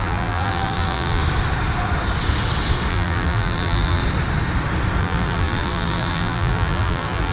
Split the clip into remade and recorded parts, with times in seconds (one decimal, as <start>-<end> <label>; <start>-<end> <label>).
0.0-1.2 remade; 1.2-2.9 recorded; 2.9-4.0 remade; 4.0-5.0 recorded; 5.0-7.3 remade